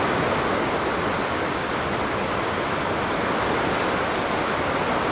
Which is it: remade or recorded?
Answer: recorded